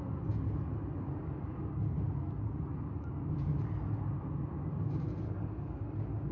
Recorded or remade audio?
recorded